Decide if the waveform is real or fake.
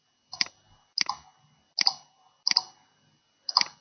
real